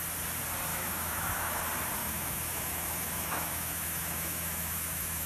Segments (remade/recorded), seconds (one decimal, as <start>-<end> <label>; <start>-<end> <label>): 0.0-0.7 recorded; 0.7-1.6 remade; 1.6-2.0 recorded; 2.0-5.3 remade